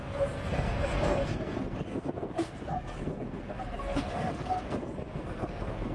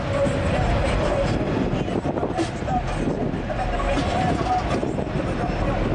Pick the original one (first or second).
second